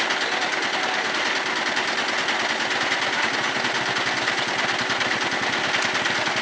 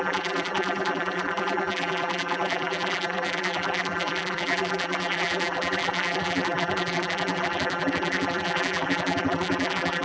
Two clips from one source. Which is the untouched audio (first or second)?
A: first